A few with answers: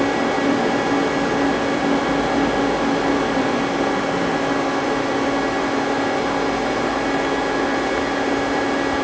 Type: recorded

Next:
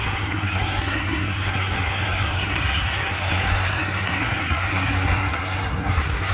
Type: remade